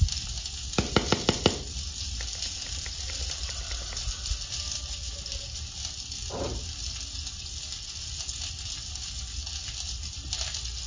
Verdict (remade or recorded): recorded